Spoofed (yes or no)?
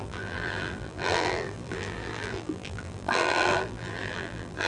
yes